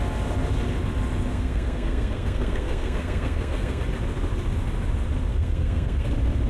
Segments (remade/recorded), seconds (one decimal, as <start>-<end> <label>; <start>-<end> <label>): 0.0-1.3 recorded; 1.3-3.8 remade; 3.8-5.3 recorded; 5.3-6.1 remade; 6.1-6.5 recorded